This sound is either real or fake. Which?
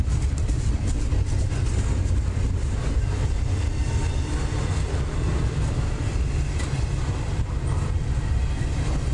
real